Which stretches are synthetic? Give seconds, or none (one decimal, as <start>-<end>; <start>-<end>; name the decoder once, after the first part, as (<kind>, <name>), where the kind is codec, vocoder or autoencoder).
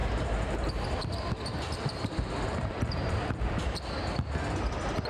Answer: 0.0-1.0 (vocoder, BigVGAN v2); 1.5-3.6